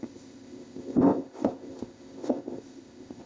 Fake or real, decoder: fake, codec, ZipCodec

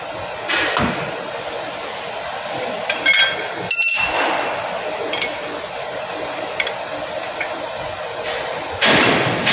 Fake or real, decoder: real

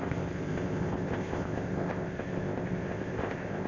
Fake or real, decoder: fake, codec, ZipCodec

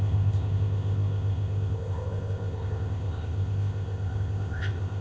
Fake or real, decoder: fake, codec, ZipCodec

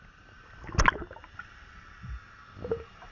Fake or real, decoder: real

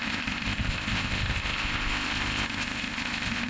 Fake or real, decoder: fake, codec, ZipCodec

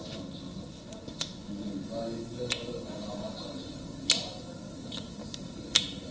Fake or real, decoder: real